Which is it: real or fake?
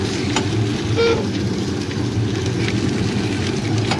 real